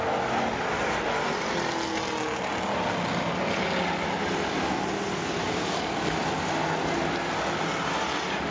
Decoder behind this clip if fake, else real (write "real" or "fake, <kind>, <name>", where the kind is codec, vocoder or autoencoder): real